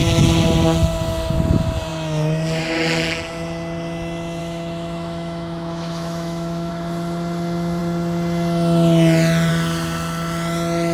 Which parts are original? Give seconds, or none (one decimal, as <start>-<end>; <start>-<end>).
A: 0.0-4.4; 6.7-10.9